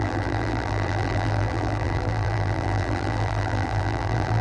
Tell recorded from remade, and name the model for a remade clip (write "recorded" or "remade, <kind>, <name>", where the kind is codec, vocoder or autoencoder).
remade, vocoder, BigVGAN v2